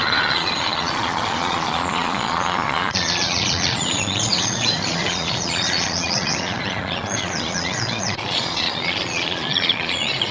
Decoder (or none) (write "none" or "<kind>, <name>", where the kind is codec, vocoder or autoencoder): vocoder, Vocos